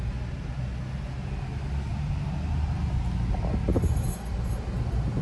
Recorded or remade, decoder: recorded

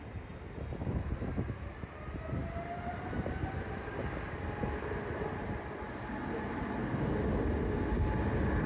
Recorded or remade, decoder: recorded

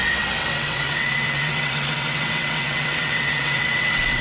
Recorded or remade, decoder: remade, vocoder, WaveNeXt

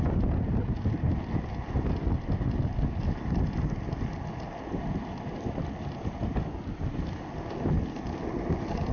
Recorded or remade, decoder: recorded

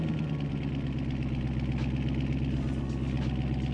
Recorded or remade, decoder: recorded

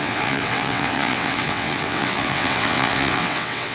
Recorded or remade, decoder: remade, vocoder, WaveNeXt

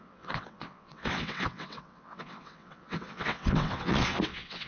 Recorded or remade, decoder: remade, vocoder, WaveNeXt